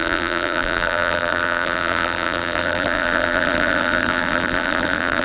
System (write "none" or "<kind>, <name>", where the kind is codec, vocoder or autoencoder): vocoder, BigVGAN v2